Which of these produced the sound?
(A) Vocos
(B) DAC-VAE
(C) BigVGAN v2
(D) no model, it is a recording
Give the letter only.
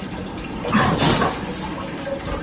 D